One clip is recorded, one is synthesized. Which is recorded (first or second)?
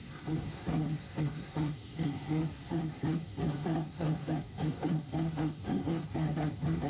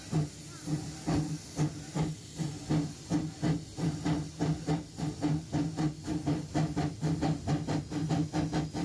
second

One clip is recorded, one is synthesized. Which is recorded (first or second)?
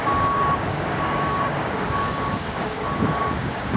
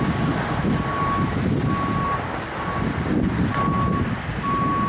second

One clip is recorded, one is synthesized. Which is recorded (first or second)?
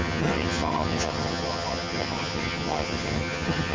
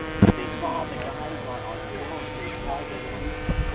second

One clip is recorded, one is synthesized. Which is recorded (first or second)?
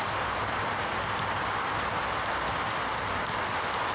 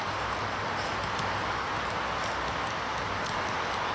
second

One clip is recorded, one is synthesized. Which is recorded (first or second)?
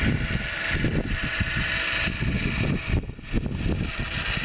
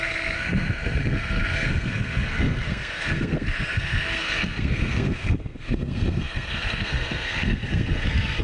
first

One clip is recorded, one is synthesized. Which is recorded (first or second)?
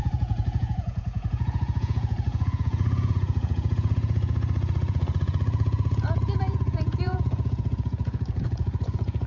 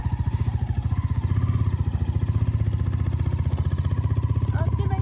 second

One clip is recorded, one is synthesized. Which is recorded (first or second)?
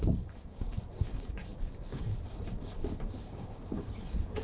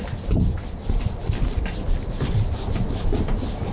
second